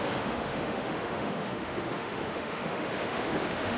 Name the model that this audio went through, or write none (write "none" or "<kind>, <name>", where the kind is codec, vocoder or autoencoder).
autoencoder, DAC-VAE